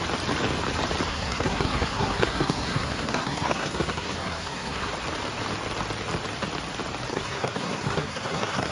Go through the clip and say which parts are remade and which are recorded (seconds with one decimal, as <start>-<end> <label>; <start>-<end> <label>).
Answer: 0.0-1.1 recorded; 1.1-4.9 remade; 4.9-7.1 recorded; 7.1-8.7 remade